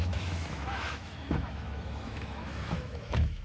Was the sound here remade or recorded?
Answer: remade